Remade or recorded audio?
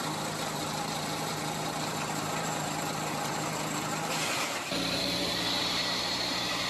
remade